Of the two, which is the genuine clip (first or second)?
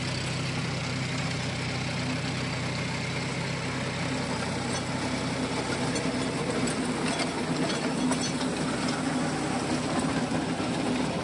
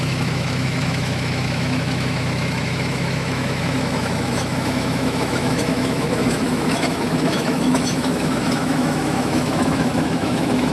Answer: first